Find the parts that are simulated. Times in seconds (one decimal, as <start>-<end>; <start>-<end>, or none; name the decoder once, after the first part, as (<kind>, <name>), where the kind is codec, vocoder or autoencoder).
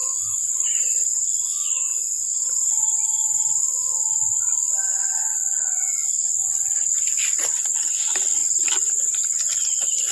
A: 0.0-1.3 (vocoder, BigVGAN v2); 2.3-3.6